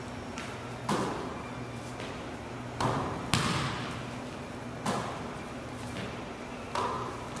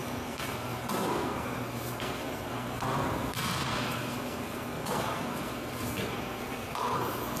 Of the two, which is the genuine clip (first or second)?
first